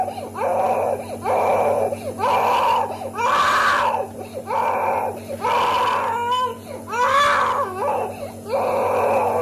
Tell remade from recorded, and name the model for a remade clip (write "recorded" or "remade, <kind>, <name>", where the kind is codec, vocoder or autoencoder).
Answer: recorded